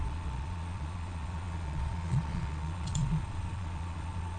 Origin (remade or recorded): remade